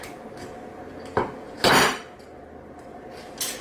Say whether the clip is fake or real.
real